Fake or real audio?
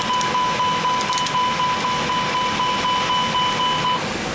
real